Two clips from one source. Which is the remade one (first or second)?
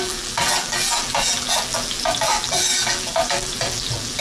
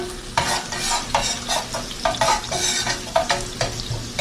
first